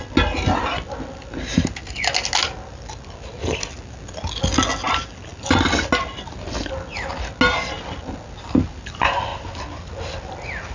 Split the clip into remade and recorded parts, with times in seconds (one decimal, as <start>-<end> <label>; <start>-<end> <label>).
0.0-10.7 recorded